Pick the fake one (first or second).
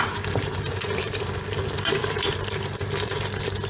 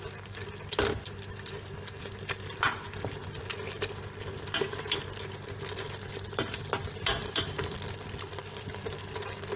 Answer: first